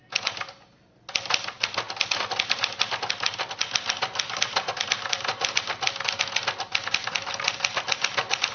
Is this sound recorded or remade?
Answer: recorded